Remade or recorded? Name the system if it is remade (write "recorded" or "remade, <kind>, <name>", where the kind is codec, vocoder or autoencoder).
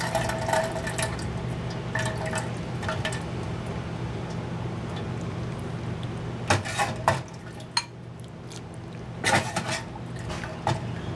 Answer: recorded